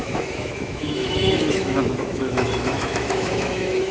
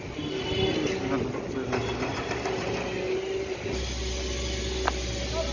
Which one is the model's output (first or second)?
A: first